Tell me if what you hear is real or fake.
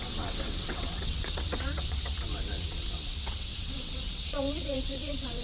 fake